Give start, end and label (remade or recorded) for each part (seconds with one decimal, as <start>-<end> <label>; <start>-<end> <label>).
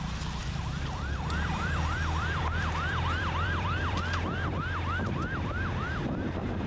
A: 0.0-0.4 recorded; 0.4-4.0 remade; 4.0-6.7 recorded